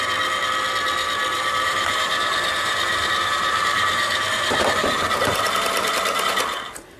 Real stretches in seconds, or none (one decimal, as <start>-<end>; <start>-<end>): 0.0-1.3; 5.5-7.0